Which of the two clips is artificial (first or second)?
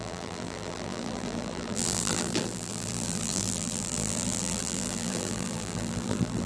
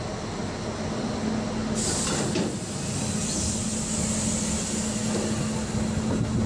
first